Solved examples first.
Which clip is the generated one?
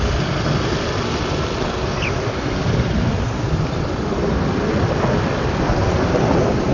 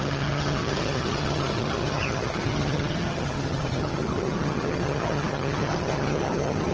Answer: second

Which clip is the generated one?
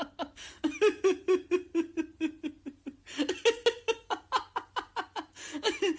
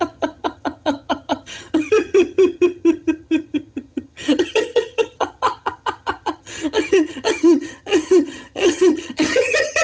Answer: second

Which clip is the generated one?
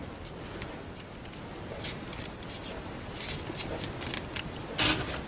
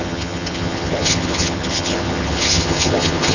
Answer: second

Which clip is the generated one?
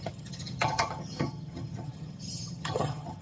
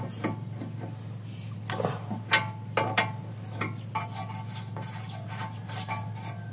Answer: first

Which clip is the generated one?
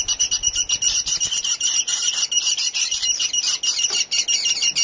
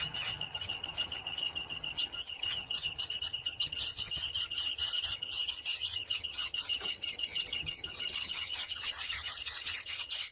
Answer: second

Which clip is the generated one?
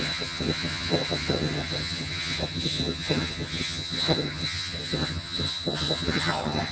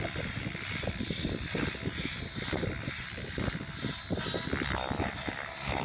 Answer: first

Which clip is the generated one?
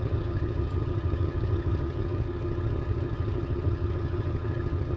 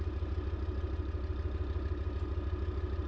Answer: first